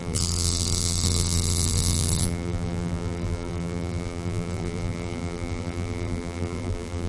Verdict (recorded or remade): remade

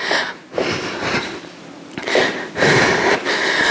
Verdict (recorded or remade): recorded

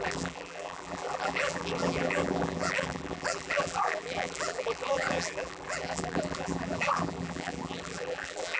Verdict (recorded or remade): remade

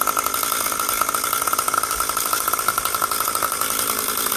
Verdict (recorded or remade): recorded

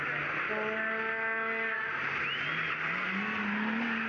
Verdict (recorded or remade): recorded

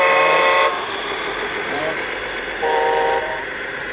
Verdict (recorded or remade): remade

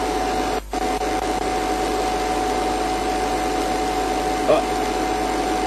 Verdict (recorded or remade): remade